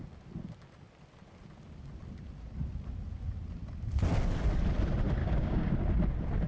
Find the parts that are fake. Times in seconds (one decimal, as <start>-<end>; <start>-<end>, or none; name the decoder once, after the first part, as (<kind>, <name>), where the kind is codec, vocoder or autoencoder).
5.2-5.7 (codec, DAC)

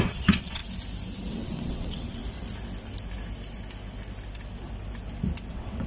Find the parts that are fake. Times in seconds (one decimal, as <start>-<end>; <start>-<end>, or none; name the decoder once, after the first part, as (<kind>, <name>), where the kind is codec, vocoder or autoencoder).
0.0-0.6 (vocoder, WaveNeXt); 1.3-2.2; 5.5-5.9